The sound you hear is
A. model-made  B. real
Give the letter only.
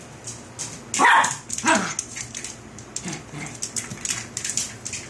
B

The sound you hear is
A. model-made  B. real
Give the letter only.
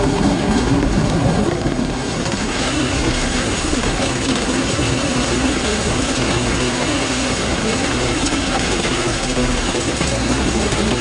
A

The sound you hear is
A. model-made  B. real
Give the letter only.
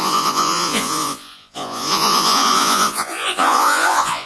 A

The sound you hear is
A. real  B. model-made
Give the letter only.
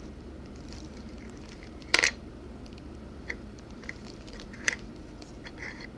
B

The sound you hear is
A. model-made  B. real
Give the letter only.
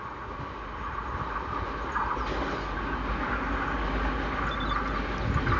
B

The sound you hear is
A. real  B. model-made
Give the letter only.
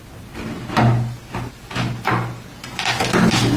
A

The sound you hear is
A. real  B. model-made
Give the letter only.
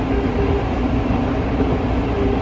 A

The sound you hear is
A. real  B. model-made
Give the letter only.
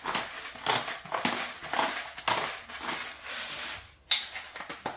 A